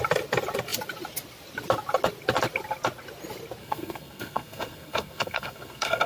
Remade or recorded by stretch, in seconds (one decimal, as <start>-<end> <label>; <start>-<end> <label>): 0.0-3.6 recorded; 3.6-6.1 remade